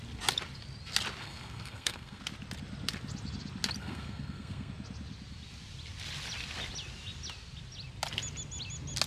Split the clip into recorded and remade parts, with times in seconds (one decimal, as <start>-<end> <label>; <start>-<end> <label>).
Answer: 0.0-1.2 recorded; 1.2-2.2 remade; 2.2-3.8 recorded; 3.8-4.7 remade; 4.7-9.1 recorded